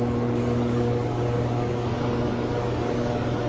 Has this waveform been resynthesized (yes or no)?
yes